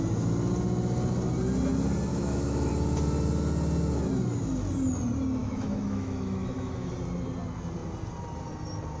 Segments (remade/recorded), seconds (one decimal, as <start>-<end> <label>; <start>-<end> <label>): 0.0-2.1 recorded; 2.1-2.7 remade; 2.7-5.4 recorded; 5.4-6.9 remade; 6.9-9.0 recorded